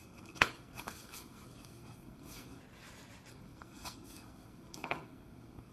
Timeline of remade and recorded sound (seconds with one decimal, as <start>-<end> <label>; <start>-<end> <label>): 0.0-2.6 remade; 2.6-3.3 recorded; 3.3-5.7 remade